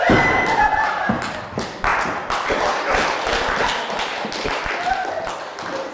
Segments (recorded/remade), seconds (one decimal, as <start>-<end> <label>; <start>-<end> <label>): 0.0-5.9 recorded